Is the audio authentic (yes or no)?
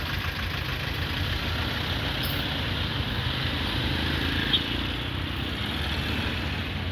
yes